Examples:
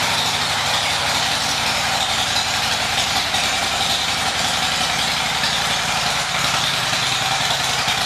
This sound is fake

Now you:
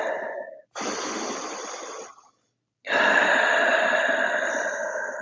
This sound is real